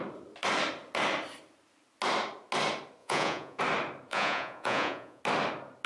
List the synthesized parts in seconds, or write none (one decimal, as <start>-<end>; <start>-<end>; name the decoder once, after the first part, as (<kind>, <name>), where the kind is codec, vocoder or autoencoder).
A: 3.0-3.6 (vocoder, Vocos); 4.1-5.2